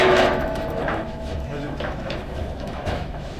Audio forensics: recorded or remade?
remade